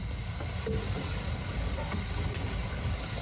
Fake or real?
real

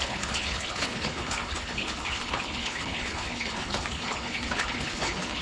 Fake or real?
fake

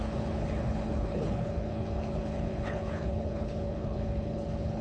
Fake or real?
fake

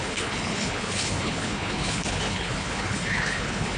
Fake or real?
fake